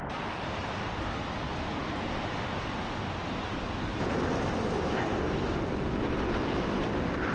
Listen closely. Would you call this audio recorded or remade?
recorded